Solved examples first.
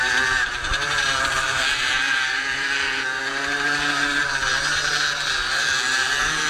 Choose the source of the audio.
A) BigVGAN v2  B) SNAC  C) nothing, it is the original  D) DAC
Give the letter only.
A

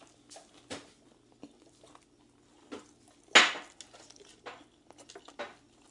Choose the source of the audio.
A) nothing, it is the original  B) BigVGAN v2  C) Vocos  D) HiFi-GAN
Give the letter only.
A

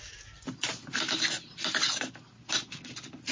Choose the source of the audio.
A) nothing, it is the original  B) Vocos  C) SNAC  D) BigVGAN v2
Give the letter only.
A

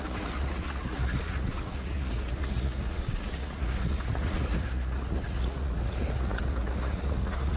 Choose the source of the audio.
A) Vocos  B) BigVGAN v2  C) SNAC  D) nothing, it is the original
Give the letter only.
A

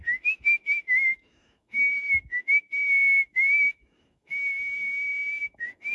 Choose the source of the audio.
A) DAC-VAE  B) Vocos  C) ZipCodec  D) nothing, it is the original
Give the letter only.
A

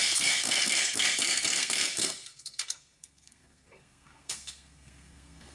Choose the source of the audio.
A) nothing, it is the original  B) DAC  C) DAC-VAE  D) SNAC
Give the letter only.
D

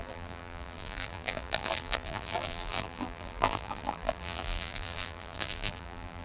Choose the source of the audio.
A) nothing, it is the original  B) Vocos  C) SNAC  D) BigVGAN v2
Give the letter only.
D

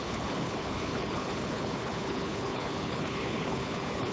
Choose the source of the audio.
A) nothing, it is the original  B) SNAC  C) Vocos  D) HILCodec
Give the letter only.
D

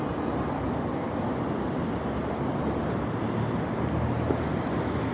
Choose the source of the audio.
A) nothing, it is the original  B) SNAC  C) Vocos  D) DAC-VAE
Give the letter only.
A